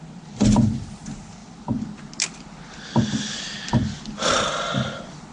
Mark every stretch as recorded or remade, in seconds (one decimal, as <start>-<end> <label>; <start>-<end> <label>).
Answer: 0.0-5.3 recorded